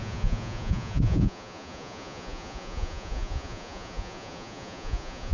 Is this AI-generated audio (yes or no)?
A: yes